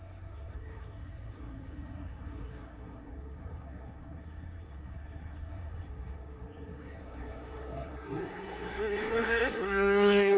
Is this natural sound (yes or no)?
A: no